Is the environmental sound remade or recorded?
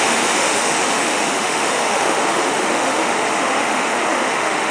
remade